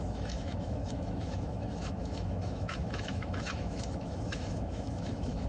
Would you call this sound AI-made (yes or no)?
yes